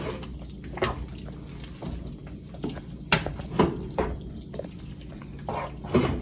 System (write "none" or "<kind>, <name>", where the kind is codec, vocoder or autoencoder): none